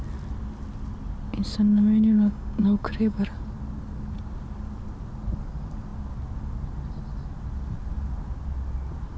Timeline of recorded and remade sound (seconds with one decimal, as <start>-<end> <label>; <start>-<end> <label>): 0.0-1.7 recorded; 1.7-3.3 remade; 3.3-9.2 recorded